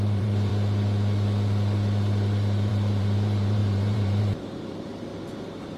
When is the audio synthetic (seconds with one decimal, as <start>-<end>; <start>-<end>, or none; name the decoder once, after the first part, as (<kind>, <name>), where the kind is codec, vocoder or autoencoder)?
0.0-0.5 (vocoder, BigVGAN v2); 2.7-5.1